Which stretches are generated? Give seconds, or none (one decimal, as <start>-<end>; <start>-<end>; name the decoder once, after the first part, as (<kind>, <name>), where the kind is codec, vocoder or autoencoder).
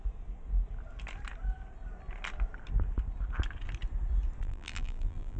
4.4-5.4 (vocoder, BigVGAN v2)